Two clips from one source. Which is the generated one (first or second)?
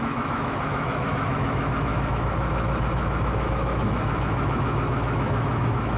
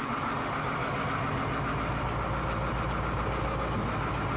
first